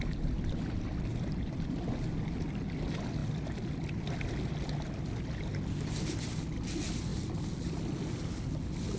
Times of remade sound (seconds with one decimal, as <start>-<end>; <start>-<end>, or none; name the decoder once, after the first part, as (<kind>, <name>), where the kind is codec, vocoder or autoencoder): 3.2-4.5 (vocoder, BigVGAN v2)